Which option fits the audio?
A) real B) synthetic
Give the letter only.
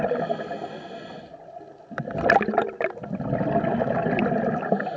A